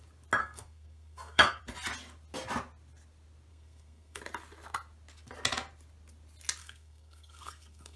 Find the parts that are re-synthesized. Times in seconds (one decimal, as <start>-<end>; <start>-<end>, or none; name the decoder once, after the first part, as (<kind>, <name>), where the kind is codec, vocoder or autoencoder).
0.4-1.6 (codec, SNAC); 3.5-4.2; 6.6-8.0